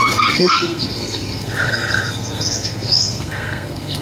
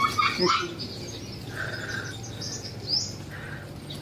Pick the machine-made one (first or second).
first